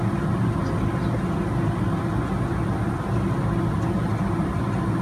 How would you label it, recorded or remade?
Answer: recorded